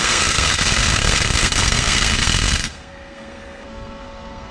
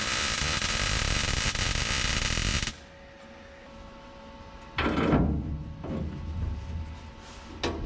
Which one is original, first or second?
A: second